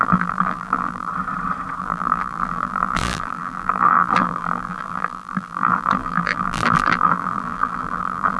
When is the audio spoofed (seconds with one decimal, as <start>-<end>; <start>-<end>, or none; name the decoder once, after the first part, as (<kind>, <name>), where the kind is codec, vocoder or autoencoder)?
0.0-1.1 (vocoder, BigVGAN v2); 1.8-8.4